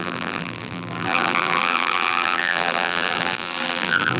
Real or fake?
fake